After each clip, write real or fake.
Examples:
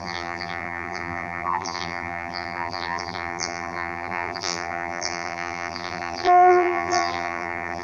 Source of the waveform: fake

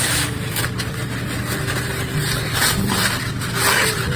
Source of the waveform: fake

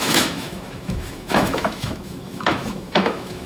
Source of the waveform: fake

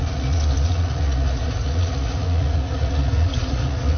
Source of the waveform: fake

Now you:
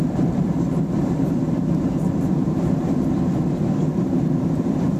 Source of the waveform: fake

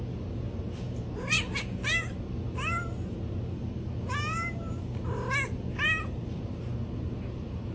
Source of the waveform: real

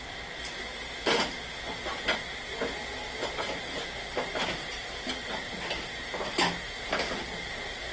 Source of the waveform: real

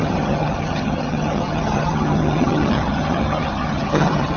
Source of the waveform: fake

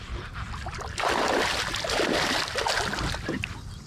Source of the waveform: real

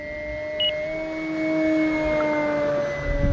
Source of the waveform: real